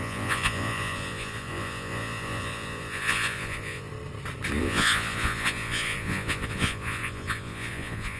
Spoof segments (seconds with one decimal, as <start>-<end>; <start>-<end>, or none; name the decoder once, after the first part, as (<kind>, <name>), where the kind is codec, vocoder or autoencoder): 0.0-3.9 (vocoder, Vocos); 4.6-8.2